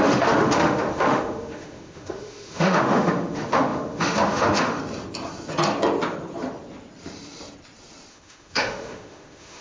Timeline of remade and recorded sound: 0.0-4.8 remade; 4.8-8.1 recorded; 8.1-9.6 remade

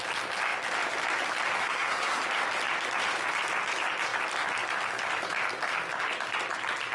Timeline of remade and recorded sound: 0.0-1.6 recorded; 1.6-2.2 remade; 2.2-6.9 recorded

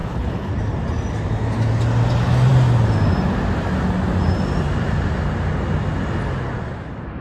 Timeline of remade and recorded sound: 0.0-0.5 remade; 0.5-7.2 recorded